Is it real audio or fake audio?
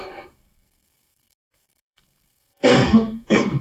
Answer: fake